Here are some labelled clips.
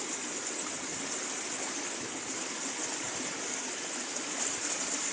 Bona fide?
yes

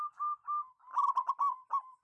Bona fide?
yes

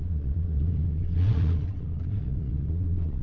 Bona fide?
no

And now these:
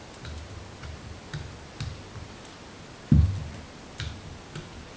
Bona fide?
yes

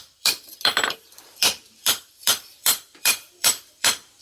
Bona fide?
no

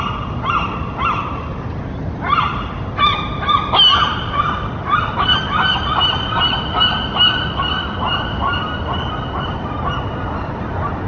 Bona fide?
yes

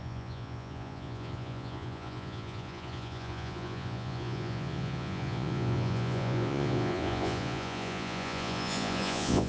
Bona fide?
no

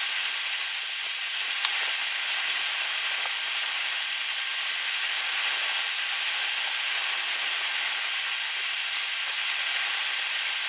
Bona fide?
yes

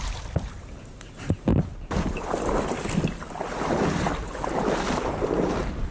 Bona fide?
yes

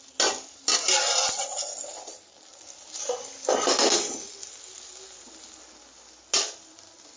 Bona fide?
yes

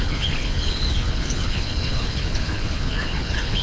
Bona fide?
no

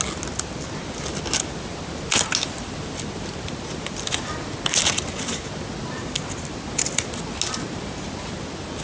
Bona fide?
yes